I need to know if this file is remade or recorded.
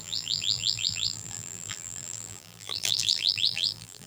remade